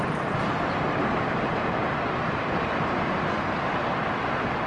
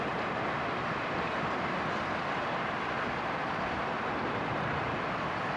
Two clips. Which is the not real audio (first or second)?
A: second